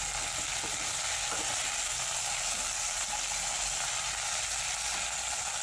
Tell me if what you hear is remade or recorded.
recorded